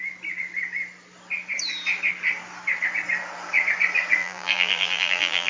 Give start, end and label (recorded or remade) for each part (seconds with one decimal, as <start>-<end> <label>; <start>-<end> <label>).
0.0-4.2 recorded; 4.2-5.5 remade